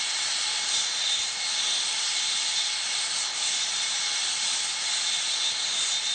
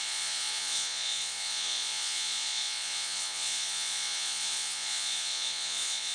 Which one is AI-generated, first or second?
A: second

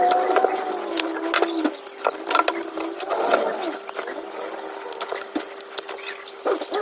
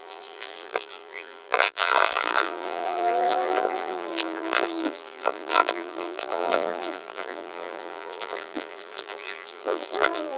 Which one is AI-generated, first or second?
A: second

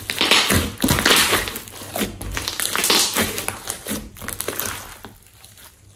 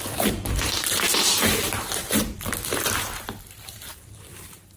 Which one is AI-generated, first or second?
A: second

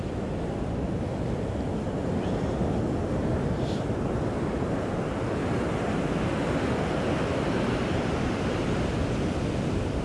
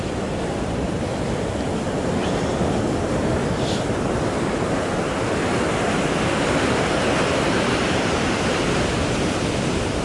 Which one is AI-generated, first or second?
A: second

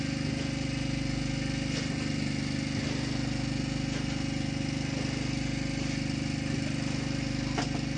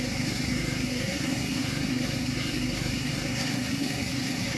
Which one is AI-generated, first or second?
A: second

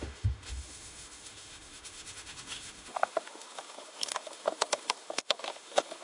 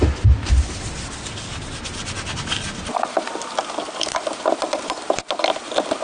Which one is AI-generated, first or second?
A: first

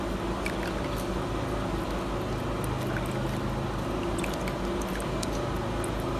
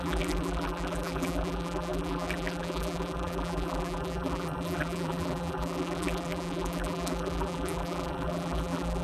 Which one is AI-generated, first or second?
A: second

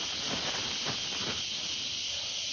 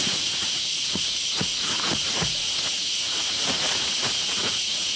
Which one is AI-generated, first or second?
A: second